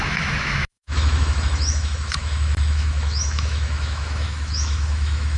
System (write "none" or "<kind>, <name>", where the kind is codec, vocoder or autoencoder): autoencoder, DAC-VAE